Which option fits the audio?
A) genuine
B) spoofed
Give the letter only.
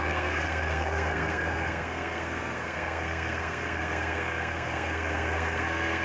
B